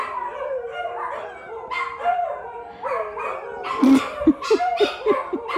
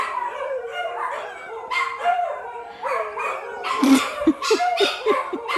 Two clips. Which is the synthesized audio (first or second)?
second